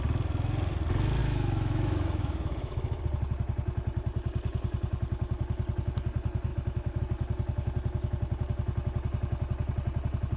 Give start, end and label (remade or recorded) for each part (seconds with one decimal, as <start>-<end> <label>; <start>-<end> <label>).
0.0-1.2 recorded; 1.2-3.0 remade; 3.0-6.5 recorded; 6.5-7.0 remade; 7.0-10.4 recorded